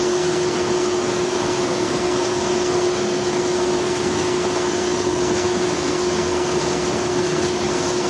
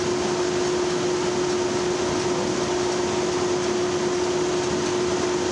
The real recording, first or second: second